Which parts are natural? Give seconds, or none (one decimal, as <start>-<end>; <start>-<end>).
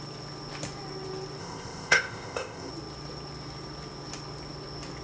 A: 0.0-1.4; 2.7-5.0